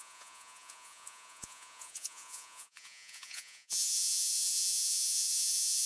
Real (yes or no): no